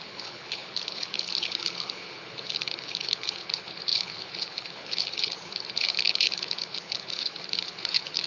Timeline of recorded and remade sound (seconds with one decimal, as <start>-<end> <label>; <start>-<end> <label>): 0.0-8.3 remade